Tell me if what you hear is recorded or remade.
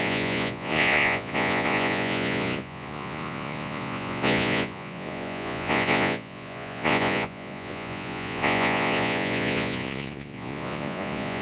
remade